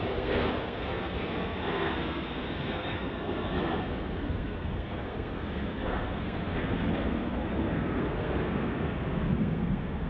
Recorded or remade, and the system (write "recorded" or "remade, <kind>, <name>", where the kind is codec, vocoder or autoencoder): remade, codec, SNAC